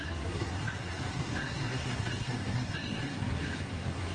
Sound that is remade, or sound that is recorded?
remade